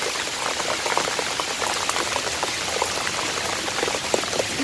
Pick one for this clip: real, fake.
real